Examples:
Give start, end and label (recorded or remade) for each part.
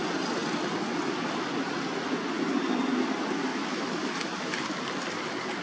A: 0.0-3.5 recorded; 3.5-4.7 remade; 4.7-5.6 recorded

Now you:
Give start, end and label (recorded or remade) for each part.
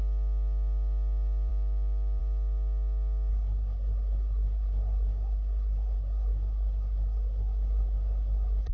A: 0.0-3.3 recorded; 3.3-8.7 remade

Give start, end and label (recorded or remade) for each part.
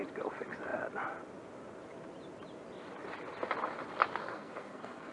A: 0.0-4.2 recorded; 4.2-5.1 remade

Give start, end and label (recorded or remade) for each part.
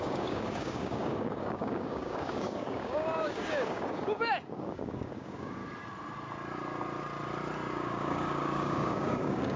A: 0.0-5.6 remade; 5.6-7.7 recorded; 7.7-9.6 remade